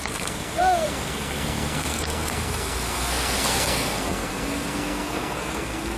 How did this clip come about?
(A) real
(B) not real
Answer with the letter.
B